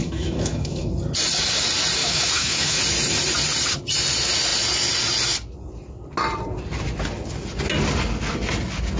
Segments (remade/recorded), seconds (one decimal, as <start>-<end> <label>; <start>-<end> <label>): 0.0-0.9 remade; 0.9-2.0 recorded; 2.0-2.8 remade; 2.8-9.0 recorded

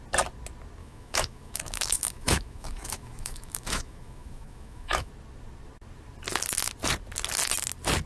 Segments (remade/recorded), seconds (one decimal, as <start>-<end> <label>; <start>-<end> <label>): 0.0-0.8 recorded; 0.8-5.1 remade; 5.1-8.1 recorded